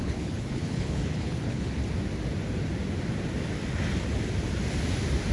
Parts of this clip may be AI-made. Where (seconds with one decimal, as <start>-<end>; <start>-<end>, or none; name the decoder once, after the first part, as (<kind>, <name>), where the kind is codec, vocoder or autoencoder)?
0.0-1.8 (codec, HILCodec)